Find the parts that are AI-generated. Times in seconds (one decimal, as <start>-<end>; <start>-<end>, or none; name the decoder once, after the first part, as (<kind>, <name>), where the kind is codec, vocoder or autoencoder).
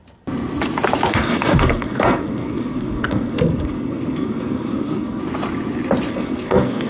1.1-5.2 (codec, SNAC); 6.1-6.9